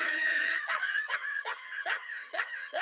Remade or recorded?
remade